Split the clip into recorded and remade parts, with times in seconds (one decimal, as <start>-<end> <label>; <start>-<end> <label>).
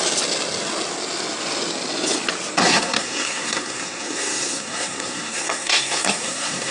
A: 0.0-2.6 recorded; 2.6-6.7 remade